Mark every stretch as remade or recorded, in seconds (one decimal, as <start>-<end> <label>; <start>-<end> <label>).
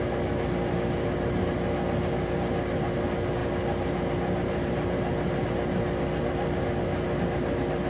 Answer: 0.0-7.9 recorded